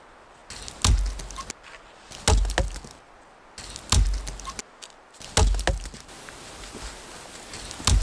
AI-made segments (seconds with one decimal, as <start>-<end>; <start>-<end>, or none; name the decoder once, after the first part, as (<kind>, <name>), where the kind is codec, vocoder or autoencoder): none